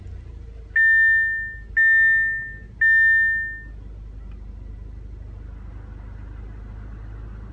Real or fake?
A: real